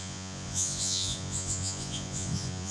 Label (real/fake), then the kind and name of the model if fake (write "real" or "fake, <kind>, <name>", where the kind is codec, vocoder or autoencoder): fake, vocoder, Vocos